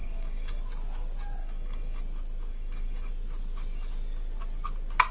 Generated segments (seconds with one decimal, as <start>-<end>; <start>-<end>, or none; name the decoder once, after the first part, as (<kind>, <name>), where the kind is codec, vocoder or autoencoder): 0.0-0.6 (codec, DAC); 1.4-2.0; 2.5-3.1